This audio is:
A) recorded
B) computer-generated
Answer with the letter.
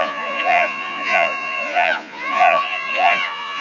B